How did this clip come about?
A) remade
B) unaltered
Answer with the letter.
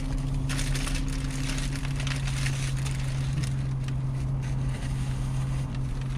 B